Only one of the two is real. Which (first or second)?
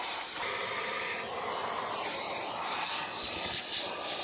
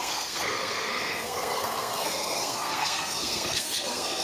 first